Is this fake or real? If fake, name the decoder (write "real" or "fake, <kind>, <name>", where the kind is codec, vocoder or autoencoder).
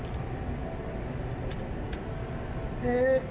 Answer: real